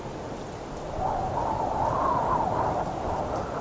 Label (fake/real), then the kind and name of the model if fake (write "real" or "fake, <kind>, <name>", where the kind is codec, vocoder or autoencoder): real